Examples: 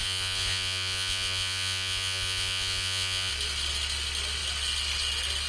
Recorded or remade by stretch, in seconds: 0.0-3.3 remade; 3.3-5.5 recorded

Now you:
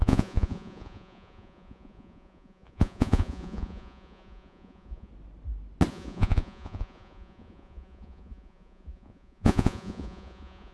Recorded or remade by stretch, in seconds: 0.0-5.1 remade; 5.1-5.9 recorded; 5.9-10.7 remade

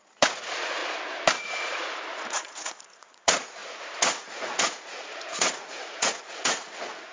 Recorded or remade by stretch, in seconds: 0.0-0.8 remade; 0.8-1.4 recorded; 1.4-7.1 remade